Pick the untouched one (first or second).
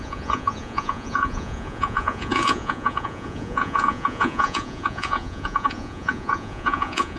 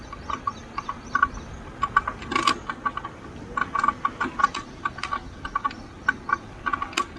second